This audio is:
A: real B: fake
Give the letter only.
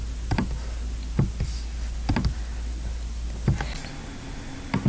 A